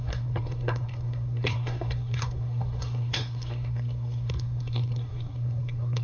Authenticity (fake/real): fake